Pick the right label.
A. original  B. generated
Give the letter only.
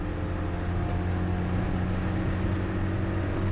A